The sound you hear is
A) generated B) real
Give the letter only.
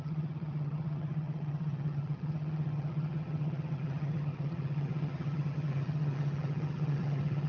A